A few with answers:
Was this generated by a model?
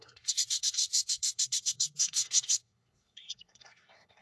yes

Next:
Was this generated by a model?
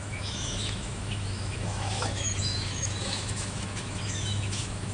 yes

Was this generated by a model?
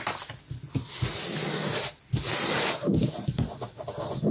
no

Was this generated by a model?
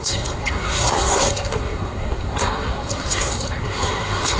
yes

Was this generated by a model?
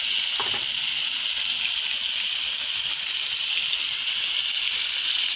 no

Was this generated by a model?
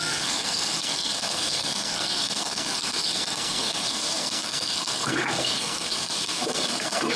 yes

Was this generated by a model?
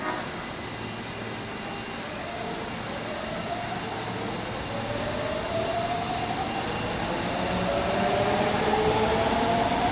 no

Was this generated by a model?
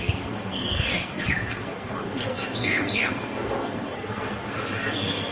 yes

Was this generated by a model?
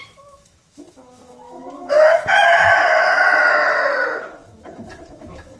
yes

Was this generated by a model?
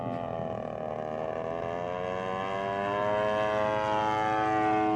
no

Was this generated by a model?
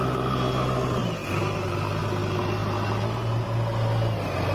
no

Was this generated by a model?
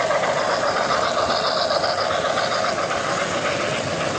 no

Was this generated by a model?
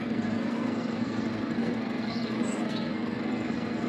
yes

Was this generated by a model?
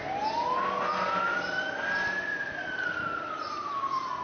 no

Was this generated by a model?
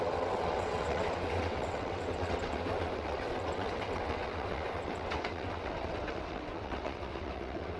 yes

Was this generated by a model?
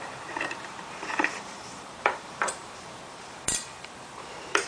yes